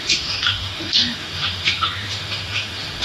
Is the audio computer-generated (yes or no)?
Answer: yes